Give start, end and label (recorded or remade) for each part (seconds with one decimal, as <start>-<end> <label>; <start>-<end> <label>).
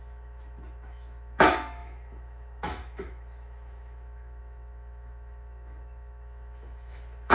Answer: 0.0-7.3 remade